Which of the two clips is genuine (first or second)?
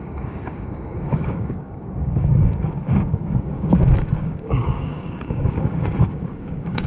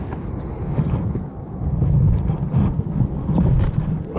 second